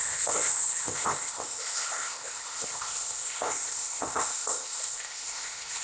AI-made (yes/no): yes